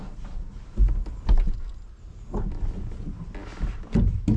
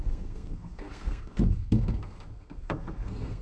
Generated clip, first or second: second